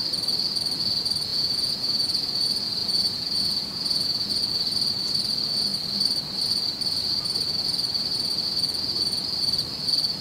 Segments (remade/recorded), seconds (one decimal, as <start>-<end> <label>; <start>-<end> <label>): 0.0-1.3 recorded; 1.3-2.4 remade; 2.4-2.8 recorded; 2.8-4.4 remade; 4.4-10.2 recorded